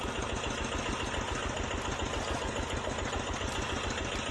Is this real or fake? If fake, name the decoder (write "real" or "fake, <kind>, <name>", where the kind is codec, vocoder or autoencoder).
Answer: real